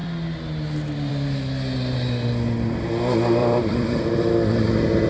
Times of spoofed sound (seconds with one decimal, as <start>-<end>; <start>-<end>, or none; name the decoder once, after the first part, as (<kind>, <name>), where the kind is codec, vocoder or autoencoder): 3.4-4.3 (vocoder, BigVGAN v2)